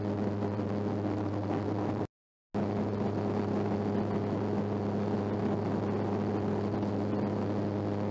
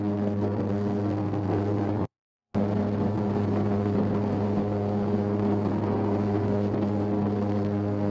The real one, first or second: first